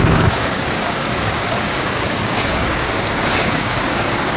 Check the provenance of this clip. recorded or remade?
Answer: remade